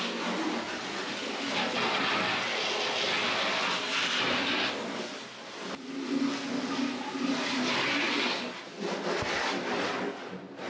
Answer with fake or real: real